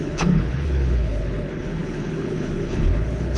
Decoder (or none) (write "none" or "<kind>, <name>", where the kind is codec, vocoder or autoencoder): codec, HILCodec